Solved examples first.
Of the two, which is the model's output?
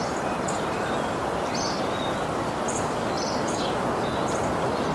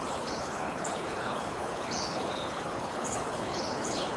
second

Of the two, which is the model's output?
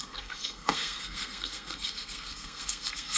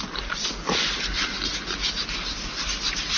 first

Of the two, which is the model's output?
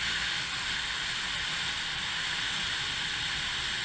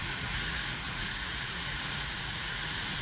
second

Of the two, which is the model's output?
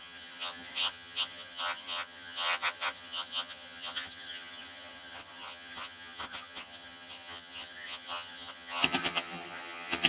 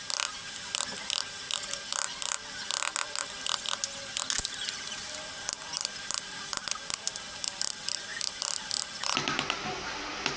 first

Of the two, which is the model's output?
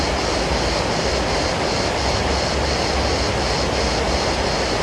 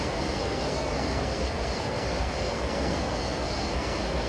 second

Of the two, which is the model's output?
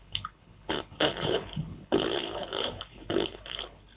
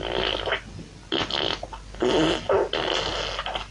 first